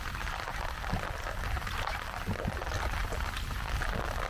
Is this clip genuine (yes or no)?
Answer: yes